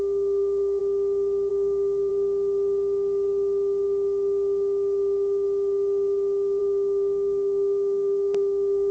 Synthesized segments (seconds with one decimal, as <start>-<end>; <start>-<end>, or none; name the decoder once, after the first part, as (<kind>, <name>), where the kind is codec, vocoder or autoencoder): 0.0-0.8 (codec, SNAC); 1.5-2.1; 6.6-8.9